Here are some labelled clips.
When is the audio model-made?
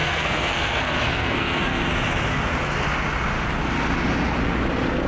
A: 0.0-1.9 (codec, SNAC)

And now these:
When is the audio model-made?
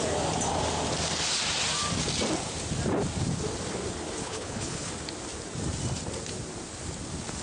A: 4.2-4.9 (codec, HILCodec)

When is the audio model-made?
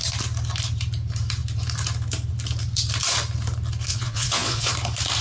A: 3.9-4.7 (vocoder, Vocos)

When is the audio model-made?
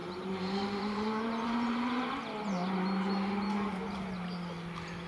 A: 0.0-2.1 (vocoder, BigVGAN v2)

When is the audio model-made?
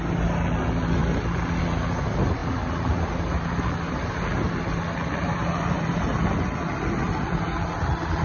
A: none